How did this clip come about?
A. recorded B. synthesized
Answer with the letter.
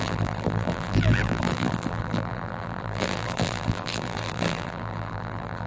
B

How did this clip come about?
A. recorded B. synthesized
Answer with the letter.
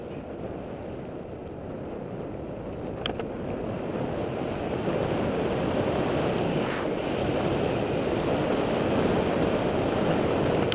A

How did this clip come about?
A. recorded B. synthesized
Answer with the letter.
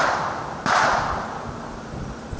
B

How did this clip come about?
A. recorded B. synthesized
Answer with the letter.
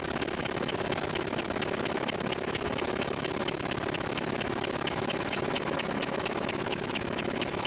B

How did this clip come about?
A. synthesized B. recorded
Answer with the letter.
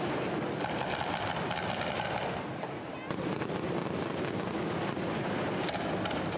B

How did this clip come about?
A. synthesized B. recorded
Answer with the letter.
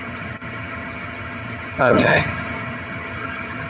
A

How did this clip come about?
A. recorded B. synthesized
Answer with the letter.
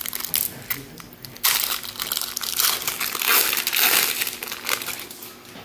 A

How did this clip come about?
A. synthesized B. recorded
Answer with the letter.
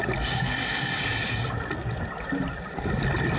B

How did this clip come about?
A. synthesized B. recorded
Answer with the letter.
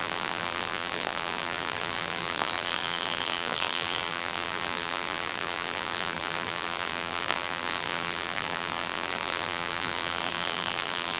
A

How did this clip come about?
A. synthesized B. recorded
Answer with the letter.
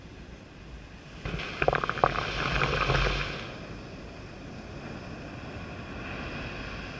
B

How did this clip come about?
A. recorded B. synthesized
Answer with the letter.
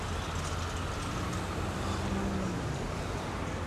A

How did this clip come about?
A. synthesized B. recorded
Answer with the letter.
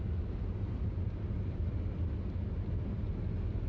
B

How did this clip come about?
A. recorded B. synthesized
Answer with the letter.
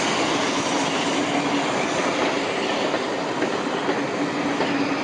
A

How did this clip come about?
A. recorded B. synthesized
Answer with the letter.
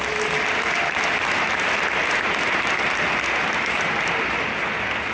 A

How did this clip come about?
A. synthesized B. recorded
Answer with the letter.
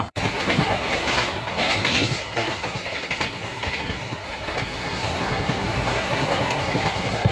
A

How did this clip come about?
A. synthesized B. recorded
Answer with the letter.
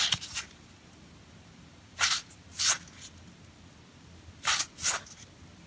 B